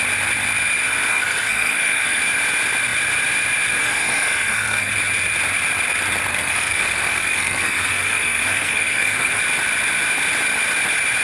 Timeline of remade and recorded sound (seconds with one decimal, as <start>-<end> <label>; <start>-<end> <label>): 0.0-1.1 recorded; 1.1-2.2 remade; 2.2-3.8 recorded; 3.8-4.9 remade; 4.9-6.3 recorded; 6.3-9.4 remade; 9.4-11.2 recorded